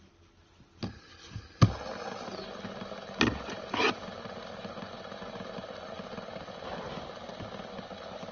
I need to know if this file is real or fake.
real